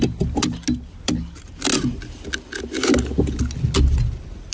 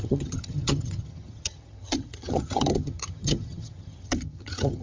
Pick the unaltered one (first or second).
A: first